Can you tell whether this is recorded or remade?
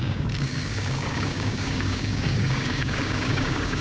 remade